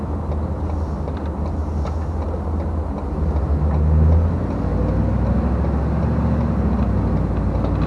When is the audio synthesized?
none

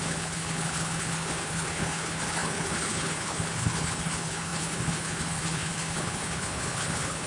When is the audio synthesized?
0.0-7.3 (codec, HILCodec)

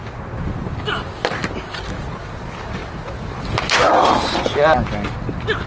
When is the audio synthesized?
none

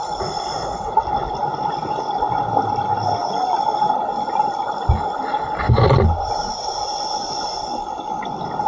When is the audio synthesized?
none

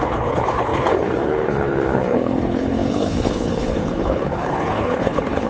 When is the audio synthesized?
0.0-5.5 (codec, HILCodec)